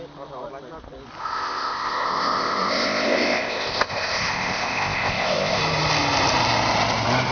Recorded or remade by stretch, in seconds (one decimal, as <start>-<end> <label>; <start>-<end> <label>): 0.0-1.2 recorded; 1.2-5.6 remade; 5.6-7.3 recorded